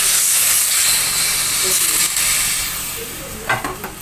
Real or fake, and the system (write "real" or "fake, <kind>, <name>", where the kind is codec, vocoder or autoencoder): real